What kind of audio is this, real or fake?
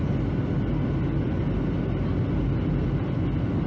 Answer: real